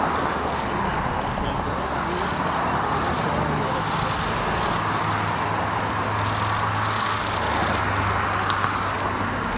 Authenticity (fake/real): real